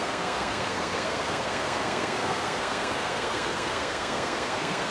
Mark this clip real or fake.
fake